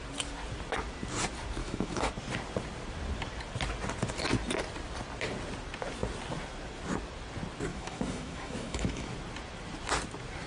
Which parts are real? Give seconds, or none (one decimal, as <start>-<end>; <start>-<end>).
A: 0.0-1.6; 2.1-7.7; 9.1-10.5

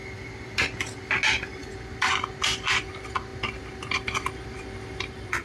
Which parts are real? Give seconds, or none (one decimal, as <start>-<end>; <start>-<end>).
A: 0.0-5.4

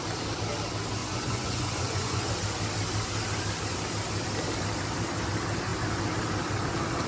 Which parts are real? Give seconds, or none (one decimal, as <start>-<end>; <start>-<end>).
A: 0.0-1.0; 2.3-7.1

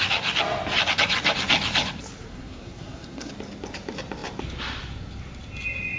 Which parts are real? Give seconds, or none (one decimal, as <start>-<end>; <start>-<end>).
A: 0.0-2.3; 3.3-6.0

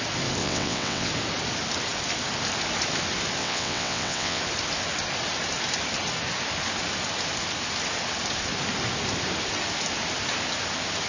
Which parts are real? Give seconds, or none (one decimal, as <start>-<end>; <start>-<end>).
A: 0.0-0.4; 1.1-3.4; 4.4-11.1

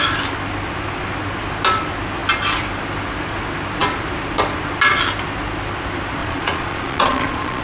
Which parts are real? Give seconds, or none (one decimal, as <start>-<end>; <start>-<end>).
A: 0.0-6.2